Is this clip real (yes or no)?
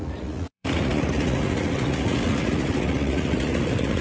no